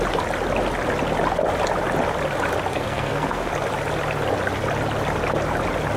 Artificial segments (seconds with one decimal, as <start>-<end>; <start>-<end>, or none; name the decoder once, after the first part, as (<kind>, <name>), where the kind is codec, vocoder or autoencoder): 2.7-3.5 (codec, SNAC)